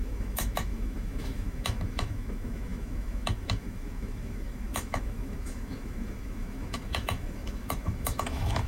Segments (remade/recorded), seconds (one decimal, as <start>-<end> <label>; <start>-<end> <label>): 0.0-8.7 remade